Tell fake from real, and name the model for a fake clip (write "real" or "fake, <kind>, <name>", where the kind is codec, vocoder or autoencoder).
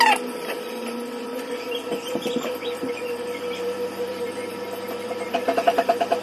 fake, vocoder, BigVGAN v2